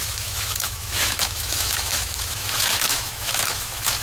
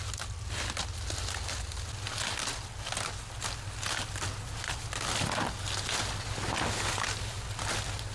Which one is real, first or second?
second